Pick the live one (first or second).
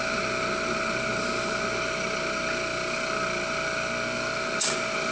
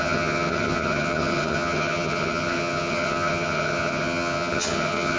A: first